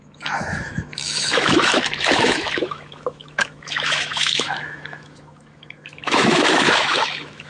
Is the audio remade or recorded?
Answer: remade